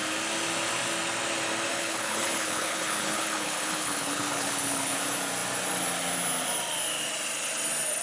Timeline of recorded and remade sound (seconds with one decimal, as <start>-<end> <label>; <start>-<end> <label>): 0.0-1.7 recorded; 1.7-5.0 remade; 5.0-8.0 recorded